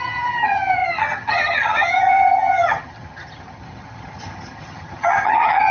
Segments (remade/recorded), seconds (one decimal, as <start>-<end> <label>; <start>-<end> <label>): 0.0-5.7 remade